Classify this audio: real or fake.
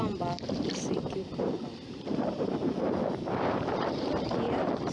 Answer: fake